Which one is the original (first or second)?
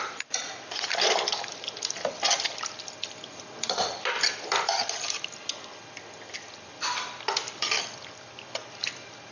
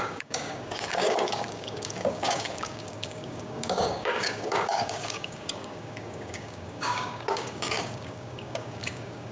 first